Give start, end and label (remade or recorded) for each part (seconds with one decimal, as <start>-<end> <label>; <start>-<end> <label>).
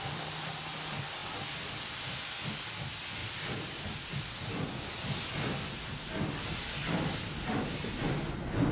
0.0-3.2 recorded; 3.2-4.1 remade; 4.1-8.7 recorded